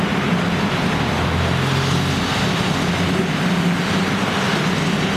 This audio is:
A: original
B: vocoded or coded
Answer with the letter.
A